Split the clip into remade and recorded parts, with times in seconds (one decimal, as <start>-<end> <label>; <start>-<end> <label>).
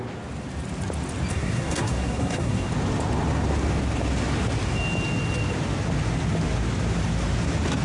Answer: 0.0-1.3 recorded; 1.3-2.7 remade; 2.7-7.8 recorded